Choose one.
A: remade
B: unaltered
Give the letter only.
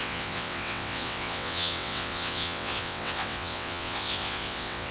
A